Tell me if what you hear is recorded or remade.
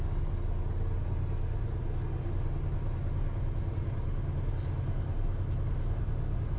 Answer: recorded